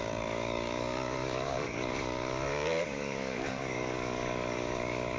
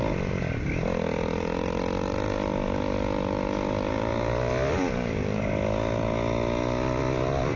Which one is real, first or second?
second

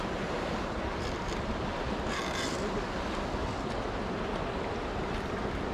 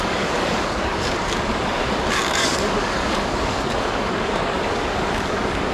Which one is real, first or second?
first